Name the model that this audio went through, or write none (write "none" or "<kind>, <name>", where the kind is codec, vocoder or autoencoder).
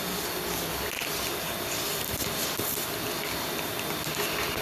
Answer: none